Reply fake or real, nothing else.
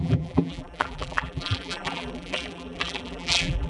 fake